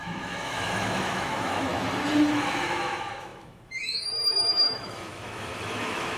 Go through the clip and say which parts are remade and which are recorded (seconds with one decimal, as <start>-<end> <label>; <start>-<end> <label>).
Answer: 0.0-1.7 remade; 1.7-2.3 recorded; 2.3-6.2 remade